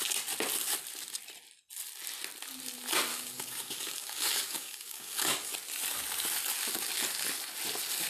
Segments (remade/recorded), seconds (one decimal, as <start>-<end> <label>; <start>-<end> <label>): 0.0-3.1 recorded; 3.1-5.5 remade; 5.5-8.1 recorded